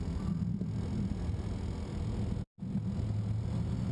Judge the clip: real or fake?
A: real